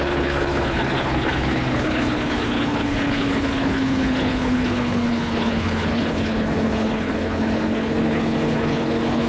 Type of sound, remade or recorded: remade